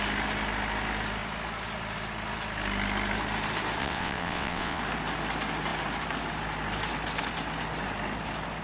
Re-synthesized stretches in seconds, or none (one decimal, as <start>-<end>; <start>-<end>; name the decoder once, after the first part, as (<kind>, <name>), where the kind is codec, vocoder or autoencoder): 3.8-4.8 (vocoder, WaveNeXt)